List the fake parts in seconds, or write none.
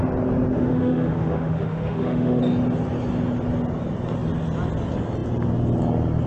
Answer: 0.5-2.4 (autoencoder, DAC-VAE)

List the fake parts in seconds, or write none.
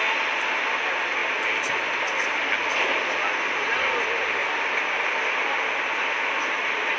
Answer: none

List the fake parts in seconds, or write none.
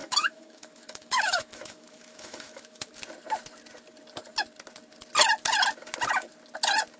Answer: 0.0-2.9 (autoencoder, DAC-VAE)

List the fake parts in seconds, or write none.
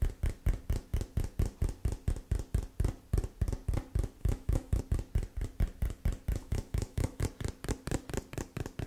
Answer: 4.2-4.8 (autoencoder, DAC-VAE); 6.4-7.2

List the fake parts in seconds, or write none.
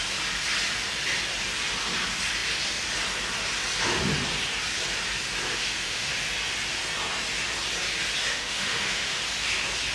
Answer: 5.5-6.1 (autoencoder, DAC-VAE); 8.2-9.2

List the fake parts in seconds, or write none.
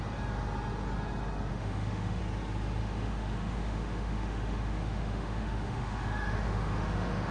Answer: 1.5-2.2 (autoencoder, DAC-VAE); 2.8-7.3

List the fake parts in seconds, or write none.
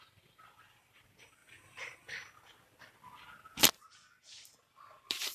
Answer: none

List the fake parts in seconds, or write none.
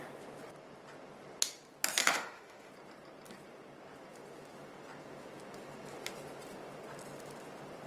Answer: 2.0-2.7 (autoencoder, DAC-VAE)